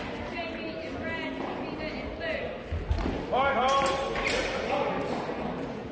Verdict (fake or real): real